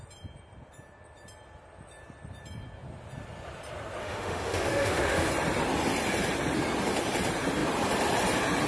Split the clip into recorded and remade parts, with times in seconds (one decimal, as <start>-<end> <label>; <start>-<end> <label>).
0.0-4.0 recorded; 4.0-5.3 remade; 5.3-8.7 recorded